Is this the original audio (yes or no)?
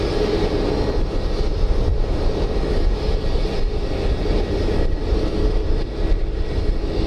yes